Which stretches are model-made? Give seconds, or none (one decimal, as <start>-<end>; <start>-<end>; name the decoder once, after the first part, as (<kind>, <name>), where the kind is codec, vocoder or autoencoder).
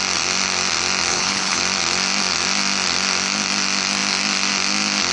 1.1-1.6 (codec, HILCodec)